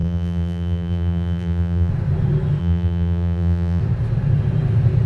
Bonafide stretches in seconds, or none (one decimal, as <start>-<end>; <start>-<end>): 1.9-2.6; 3.8-5.1